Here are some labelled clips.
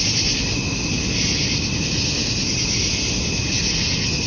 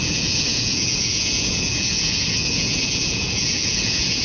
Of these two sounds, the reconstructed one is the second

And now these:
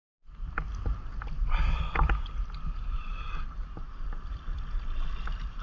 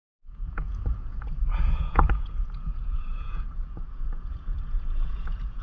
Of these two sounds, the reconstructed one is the second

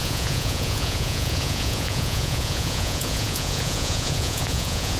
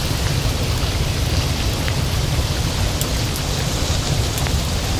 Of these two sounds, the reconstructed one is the first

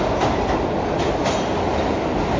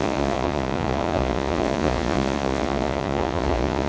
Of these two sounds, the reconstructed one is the second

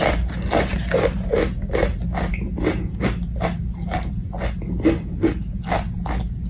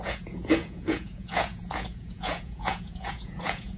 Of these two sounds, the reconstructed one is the second